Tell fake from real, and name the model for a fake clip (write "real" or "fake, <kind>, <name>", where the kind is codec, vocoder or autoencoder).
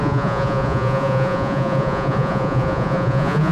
fake, vocoder, Vocos